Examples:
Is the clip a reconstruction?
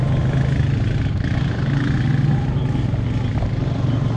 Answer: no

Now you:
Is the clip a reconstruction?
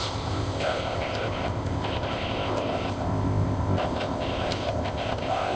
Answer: yes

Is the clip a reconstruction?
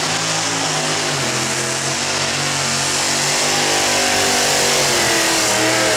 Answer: no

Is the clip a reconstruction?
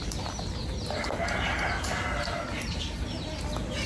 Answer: no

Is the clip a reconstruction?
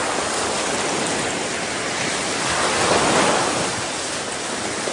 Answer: no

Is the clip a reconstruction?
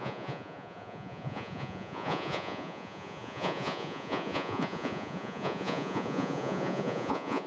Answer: yes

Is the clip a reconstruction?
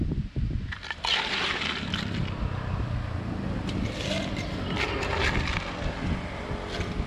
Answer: no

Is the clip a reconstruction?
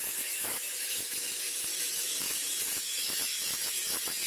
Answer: yes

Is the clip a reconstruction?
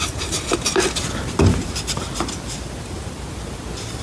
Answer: no